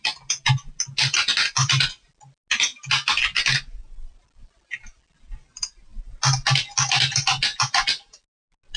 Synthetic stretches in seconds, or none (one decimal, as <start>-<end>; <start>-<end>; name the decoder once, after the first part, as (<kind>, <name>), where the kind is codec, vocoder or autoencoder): none